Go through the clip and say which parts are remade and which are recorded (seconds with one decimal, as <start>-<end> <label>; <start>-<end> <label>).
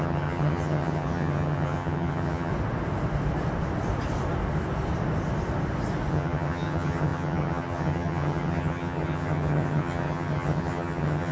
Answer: 0.0-2.5 remade; 2.5-6.1 recorded; 6.1-11.3 remade